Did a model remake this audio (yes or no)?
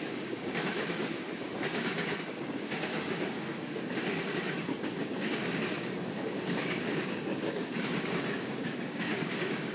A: yes